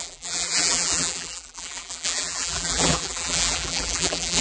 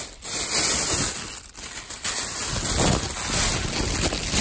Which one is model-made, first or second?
first